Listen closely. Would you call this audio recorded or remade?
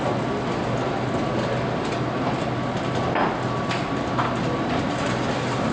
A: recorded